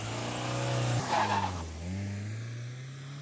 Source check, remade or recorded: recorded